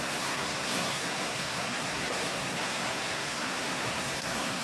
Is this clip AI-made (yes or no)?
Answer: yes